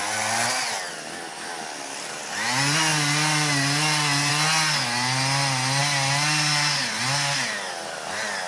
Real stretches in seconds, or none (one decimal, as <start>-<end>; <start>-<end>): 0.0-8.5